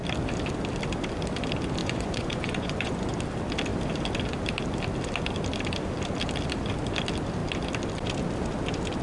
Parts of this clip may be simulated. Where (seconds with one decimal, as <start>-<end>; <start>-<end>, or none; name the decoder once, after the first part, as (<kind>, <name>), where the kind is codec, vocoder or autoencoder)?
1.8-3.1 (vocoder, Vocos)